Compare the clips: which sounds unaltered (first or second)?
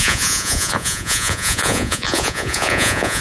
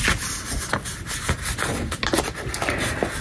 second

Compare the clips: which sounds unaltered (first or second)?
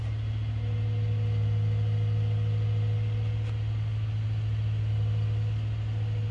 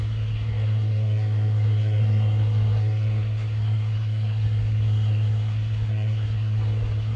first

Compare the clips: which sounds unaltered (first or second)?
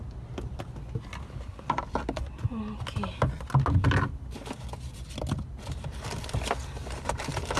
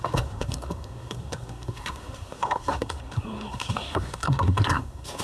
first